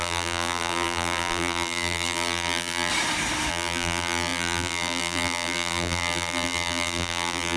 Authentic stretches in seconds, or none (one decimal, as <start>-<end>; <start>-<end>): 2.9-3.5